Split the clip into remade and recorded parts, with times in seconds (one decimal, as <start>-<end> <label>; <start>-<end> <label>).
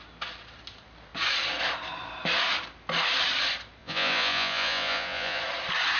0.0-3.8 recorded; 3.8-5.4 remade; 5.4-6.0 recorded